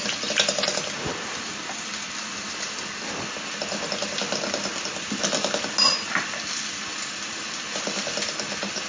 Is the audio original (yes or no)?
yes